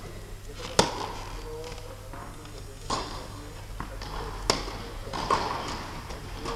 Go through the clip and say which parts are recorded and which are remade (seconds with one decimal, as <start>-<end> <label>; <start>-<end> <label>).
0.0-2.2 recorded; 2.2-3.6 remade; 3.6-6.6 recorded